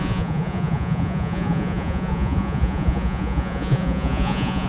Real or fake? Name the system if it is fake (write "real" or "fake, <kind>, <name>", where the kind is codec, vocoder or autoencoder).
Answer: fake, vocoder, Vocos